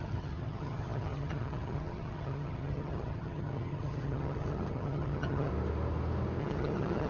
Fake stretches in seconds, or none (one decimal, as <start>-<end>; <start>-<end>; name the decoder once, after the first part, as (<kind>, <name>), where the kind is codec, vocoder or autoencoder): 0.0-5.5 (vocoder, HiFi-GAN); 6.4-7.1